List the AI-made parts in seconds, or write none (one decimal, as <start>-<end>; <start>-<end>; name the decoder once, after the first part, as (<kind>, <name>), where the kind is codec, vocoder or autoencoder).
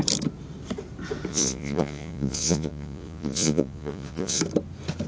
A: 1.3-4.4 (vocoder, Vocos)